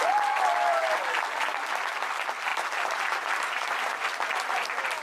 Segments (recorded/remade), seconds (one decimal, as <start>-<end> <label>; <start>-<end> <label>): 0.0-2.5 recorded; 2.5-3.9 remade; 3.9-5.0 recorded